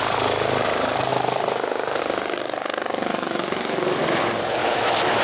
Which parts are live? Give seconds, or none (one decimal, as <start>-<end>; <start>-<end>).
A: 0.0-3.1; 4.0-4.6